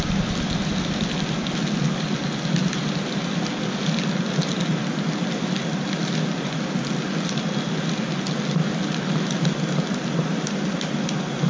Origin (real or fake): real